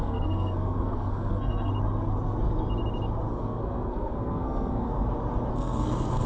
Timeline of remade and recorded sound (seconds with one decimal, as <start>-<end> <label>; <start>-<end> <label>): 0.0-1.7 remade; 1.7-3.3 recorded; 3.3-4.9 remade; 4.9-5.5 recorded; 5.5-6.3 remade